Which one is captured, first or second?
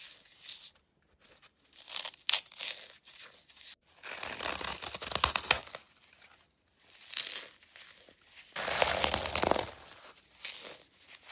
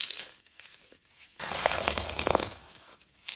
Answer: first